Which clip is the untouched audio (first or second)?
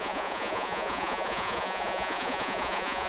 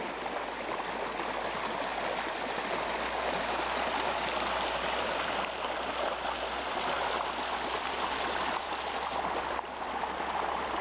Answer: second